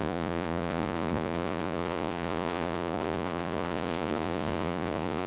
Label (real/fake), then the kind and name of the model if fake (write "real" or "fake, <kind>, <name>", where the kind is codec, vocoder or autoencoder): fake, vocoder, Vocos